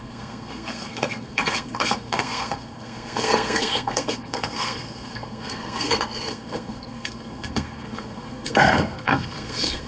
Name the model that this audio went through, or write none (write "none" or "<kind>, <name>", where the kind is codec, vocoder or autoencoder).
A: codec, SNAC